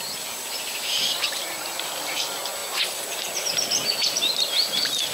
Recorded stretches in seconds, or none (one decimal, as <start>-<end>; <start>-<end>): 0.0-5.1